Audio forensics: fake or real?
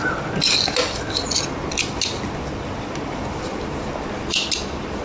real